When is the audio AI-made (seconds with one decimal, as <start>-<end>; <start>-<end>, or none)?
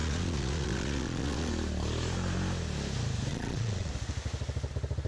0.0-1.5; 3.3-3.9